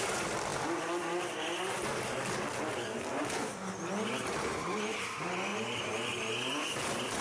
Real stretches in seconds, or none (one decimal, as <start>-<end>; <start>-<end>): 0.0-7.2